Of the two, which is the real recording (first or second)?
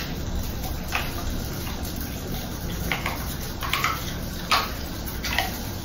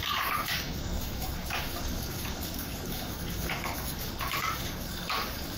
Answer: first